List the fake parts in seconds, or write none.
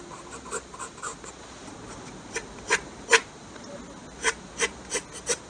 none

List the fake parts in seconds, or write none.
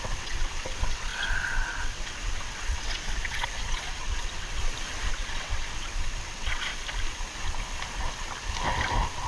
0.0-4.6; 5.1-6.7